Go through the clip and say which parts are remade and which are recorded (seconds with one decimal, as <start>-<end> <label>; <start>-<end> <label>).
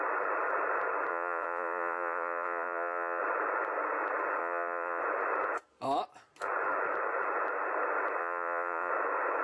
0.0-1.1 recorded; 1.1-3.2 remade; 3.2-4.4 recorded; 4.4-5.0 remade; 5.0-8.2 recorded; 8.2-8.9 remade; 8.9-9.4 recorded